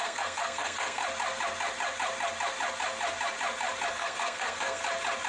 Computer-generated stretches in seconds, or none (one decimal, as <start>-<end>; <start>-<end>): 0.0-1.0; 3.9-4.8